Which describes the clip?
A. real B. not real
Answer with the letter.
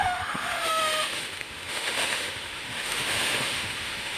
B